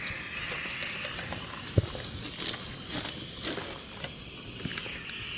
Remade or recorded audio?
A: recorded